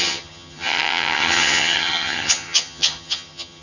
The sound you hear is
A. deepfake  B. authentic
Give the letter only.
A